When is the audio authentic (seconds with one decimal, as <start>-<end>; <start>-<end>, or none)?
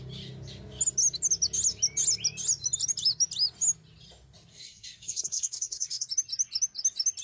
0.0-4.5; 6.1-7.2